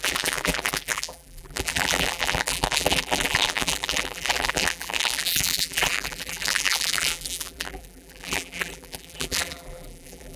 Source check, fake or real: fake